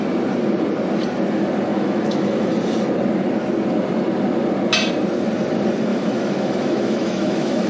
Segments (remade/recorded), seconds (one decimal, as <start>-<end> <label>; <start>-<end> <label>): 0.0-1.7 recorded; 1.7-2.5 remade; 2.5-5.9 recorded; 5.9-7.7 remade

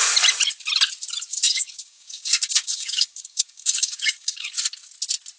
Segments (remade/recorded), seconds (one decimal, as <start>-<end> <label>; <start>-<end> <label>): 0.0-1.3 recorded; 1.3-4.5 remade; 4.5-5.4 recorded

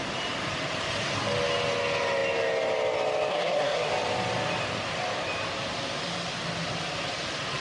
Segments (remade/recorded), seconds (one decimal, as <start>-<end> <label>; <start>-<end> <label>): 0.0-3.3 recorded; 3.3-3.9 remade; 3.9-7.6 recorded

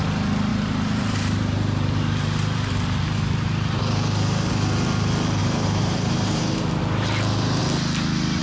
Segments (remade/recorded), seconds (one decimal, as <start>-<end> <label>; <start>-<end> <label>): 0.0-0.5 recorded; 0.5-3.8 remade; 3.8-5.4 recorded; 5.4-6.8 remade; 6.8-8.4 recorded